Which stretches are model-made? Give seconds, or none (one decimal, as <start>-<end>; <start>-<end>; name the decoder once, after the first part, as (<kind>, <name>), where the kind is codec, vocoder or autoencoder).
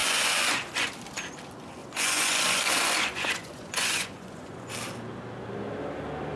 0.0-0.9 (vocoder, Vocos); 1.8-4.7